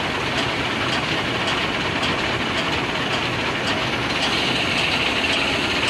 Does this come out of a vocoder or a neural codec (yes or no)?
no